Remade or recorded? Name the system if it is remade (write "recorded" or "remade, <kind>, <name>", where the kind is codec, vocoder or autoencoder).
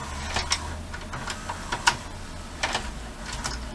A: recorded